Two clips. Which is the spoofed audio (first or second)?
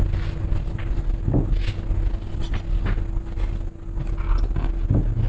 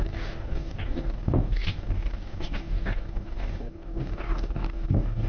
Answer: second